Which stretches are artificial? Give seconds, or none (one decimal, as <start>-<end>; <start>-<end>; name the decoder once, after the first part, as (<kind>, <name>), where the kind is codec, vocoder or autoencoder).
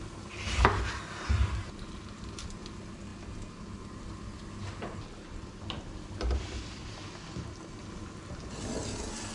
none